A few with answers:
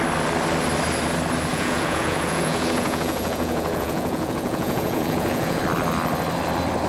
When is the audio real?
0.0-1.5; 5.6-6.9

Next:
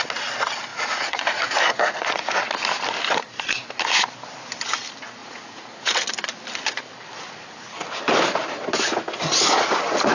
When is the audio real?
0.0-0.7; 2.4-5.2; 6.1-10.1

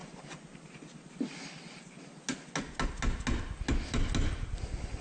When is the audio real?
0.0-5.0

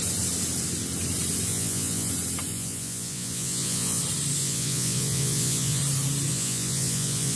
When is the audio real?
0.0-1.5; 2.1-2.5; 4.0-4.4; 5.8-6.3

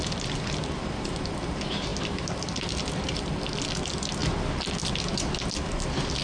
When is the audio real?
0.0-6.2